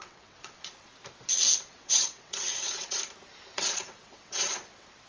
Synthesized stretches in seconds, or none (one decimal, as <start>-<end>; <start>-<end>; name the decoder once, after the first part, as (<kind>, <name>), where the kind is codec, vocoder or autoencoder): 0.0-0.9 (vocoder, WaveNeXt); 1.7-3.0; 3.5-5.1